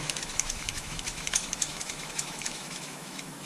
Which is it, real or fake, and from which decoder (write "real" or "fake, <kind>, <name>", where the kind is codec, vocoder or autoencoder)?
fake, autoencoder, DAC-VAE